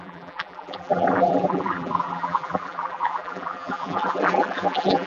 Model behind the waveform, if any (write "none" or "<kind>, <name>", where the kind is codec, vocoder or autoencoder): vocoder, BigVGAN v2